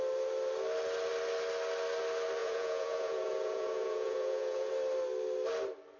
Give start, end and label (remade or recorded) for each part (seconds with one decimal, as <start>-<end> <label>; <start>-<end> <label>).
0.0-2.4 recorded; 2.4-4.7 remade; 4.7-6.0 recorded